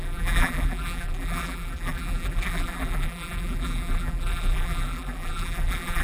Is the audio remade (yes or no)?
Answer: yes